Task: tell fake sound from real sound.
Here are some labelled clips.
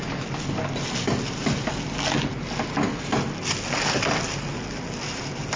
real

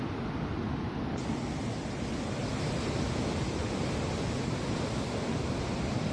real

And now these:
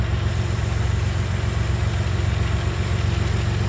real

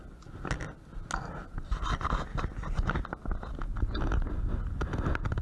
real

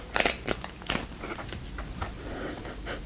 real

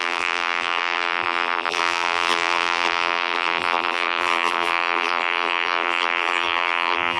fake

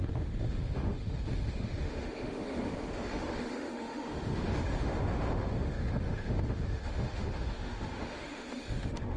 fake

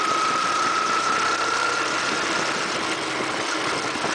real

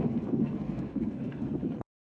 fake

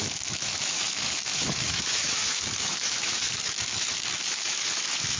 fake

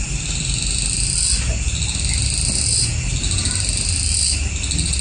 real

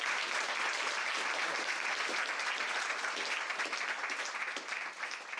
real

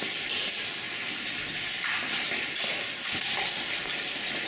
real